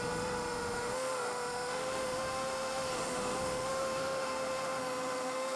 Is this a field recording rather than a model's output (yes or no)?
no